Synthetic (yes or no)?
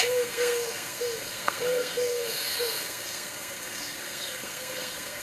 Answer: yes